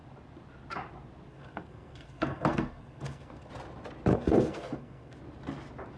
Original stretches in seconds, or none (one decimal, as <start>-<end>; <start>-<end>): 0.0-1.3; 3.5-4.1; 5.2-6.0